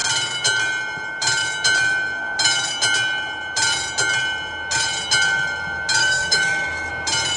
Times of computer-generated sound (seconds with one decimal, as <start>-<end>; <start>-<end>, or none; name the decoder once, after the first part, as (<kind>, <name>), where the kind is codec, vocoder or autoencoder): 6.0-6.9 (autoencoder, DAC-VAE)